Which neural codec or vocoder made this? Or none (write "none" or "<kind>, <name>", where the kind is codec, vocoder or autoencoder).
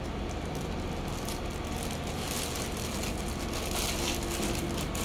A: none